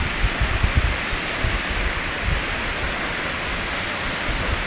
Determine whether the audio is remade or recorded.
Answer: recorded